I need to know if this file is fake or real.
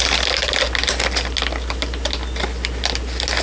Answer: real